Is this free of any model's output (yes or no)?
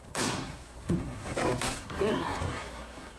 no